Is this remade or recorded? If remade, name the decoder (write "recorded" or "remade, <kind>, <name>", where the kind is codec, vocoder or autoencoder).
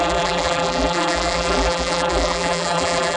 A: remade, vocoder, BigVGAN v2